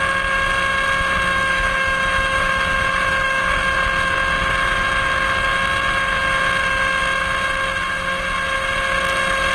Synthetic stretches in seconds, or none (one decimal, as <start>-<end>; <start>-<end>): 1.3-3.6